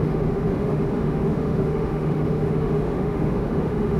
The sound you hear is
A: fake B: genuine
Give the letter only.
A